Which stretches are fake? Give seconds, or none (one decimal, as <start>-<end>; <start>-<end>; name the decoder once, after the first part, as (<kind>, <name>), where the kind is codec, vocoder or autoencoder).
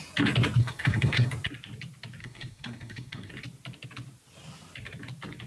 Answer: 0.6-1.3 (codec, SNAC); 2.2-3.3